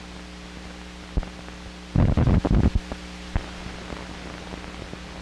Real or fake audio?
real